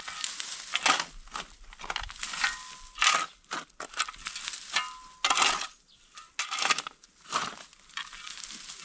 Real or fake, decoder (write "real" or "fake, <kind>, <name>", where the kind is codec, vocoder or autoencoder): real